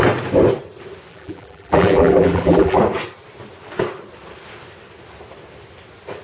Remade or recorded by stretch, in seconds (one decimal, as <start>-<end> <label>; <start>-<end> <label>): 0.0-1.1 recorded; 1.1-2.8 remade; 2.8-6.2 recorded